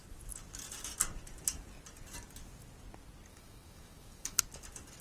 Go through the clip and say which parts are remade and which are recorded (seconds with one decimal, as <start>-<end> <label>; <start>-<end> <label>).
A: 0.0-3.3 recorded; 3.3-4.4 remade; 4.4-5.0 recorded